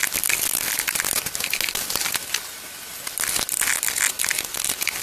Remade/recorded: recorded